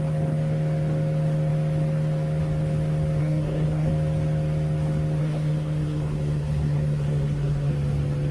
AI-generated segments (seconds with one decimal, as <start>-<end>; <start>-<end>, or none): 3.2-3.9; 5.2-7.7

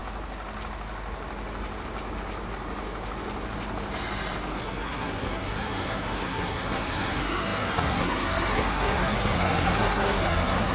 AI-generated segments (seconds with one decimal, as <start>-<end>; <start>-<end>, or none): 4.6-10.7

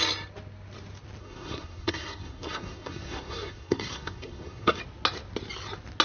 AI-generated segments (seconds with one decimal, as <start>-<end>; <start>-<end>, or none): 1.2-4.8